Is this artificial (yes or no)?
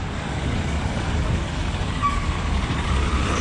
yes